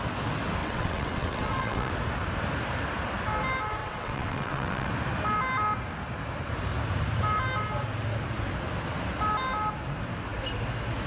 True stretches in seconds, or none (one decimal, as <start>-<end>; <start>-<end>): 0.0-0.6; 1.9-3.8; 4.9-11.1